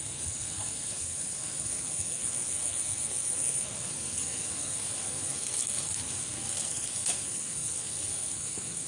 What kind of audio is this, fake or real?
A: fake